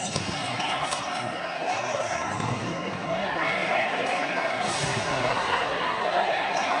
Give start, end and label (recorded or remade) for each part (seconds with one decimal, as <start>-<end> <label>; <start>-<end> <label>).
0.0-6.8 remade